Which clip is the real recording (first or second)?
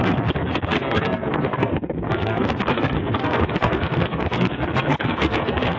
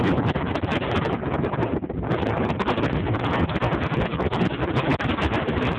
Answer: second